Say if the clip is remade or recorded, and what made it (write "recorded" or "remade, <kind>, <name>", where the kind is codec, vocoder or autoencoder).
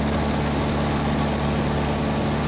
recorded